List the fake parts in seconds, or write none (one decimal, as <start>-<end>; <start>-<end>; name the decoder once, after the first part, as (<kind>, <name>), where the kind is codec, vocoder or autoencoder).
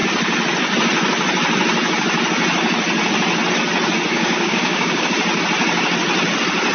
4.1-5.1 (codec, DAC)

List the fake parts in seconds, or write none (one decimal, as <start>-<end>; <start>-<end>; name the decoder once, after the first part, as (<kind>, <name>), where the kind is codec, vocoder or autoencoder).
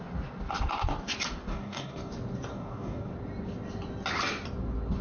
1.5-2.1 (codec, DAC); 2.5-3.1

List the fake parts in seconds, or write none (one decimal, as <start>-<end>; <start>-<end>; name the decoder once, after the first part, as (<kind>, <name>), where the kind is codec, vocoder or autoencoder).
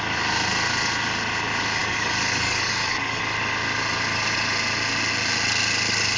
1.8-3.2 (codec, DAC)